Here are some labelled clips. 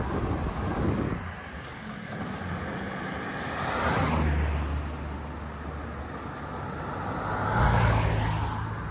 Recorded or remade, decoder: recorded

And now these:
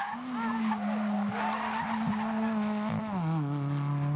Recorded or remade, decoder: recorded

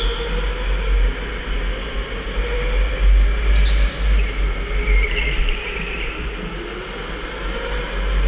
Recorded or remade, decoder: recorded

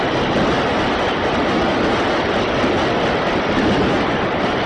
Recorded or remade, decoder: recorded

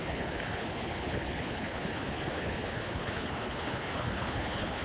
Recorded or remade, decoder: remade, codec, HILCodec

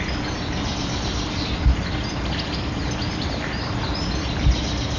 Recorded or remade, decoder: recorded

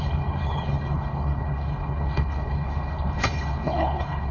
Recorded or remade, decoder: remade, codec, HILCodec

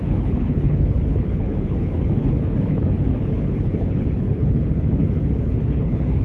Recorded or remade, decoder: remade, codec, HILCodec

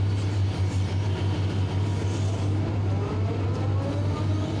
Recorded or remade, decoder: recorded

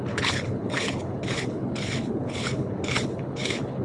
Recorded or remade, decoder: remade, codec, HILCodec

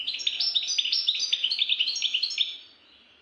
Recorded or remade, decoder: recorded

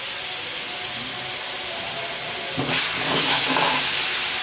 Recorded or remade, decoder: recorded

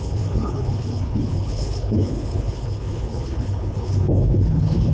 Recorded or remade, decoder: remade, codec, HILCodec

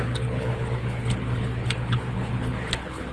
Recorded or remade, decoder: remade, codec, HILCodec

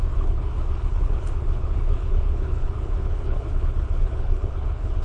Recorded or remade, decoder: remade, codec, HILCodec